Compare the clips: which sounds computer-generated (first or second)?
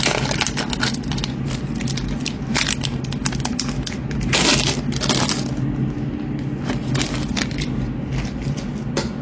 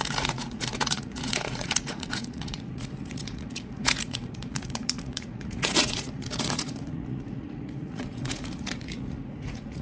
second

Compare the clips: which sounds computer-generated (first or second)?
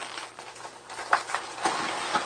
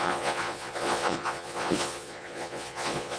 second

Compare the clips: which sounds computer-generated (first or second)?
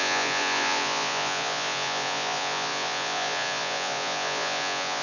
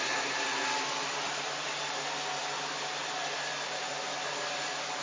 first